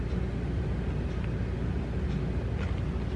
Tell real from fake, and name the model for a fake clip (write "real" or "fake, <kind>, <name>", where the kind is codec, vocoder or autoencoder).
real